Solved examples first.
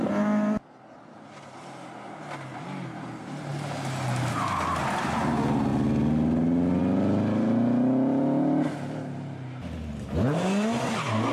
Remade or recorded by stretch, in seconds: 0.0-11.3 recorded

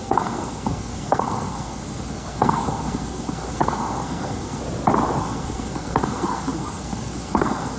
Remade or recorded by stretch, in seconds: 0.0-4.6 remade; 4.6-5.2 recorded; 5.2-7.8 remade

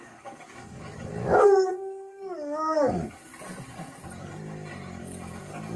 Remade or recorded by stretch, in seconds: 0.0-3.3 remade; 3.3-5.0 recorded; 5.0-5.8 remade

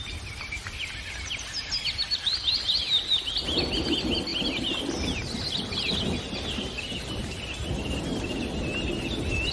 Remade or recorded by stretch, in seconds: 0.0-9.5 recorded

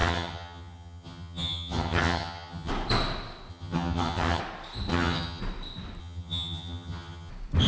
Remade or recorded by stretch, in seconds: 0.0-2.7 remade; 2.7-3.5 recorded; 3.5-4.4 remade; 4.4-4.9 recorded; 4.9-5.4 remade; 5.4-6.0 recorded; 6.0-7.3 remade; 7.3-7.7 recorded

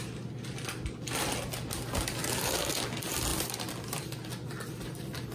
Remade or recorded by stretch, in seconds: 0.0-5.3 recorded

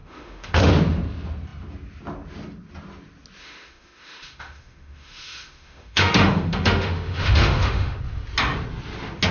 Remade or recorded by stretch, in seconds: 0.0-0.7 remade; 0.7-3.4 recorded; 3.4-8.0 remade; 8.0-9.3 recorded

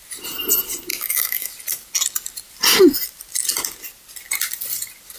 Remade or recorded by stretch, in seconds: 0.0-0.9 recorded; 0.9-1.5 remade; 1.5-5.2 recorded